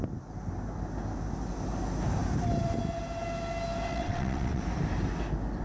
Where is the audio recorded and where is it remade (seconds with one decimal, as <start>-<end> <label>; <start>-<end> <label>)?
0.0-3.9 recorded; 3.9-4.6 remade; 4.6-5.6 recorded